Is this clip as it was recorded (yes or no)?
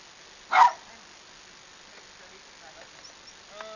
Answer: yes